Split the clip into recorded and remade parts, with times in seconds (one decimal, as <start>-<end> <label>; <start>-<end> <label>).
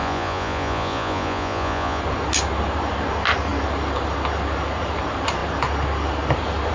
0.0-2.0 remade; 2.0-6.7 recorded